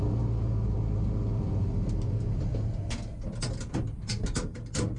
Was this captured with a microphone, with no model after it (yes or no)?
yes